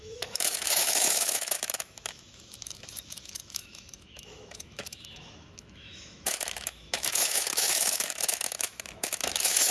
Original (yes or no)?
no